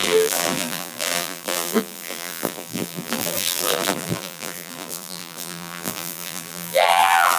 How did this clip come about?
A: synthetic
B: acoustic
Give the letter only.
A